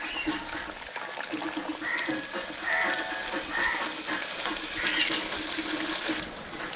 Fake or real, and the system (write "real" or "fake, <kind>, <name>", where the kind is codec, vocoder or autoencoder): real